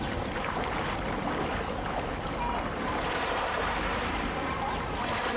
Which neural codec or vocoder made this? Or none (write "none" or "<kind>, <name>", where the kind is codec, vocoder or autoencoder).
none